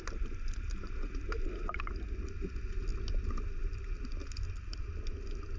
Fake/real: real